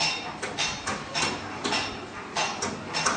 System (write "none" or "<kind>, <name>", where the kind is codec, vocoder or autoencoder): none